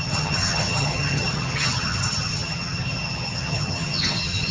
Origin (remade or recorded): remade